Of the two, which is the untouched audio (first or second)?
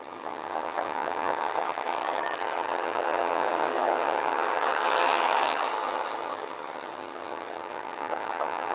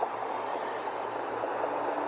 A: second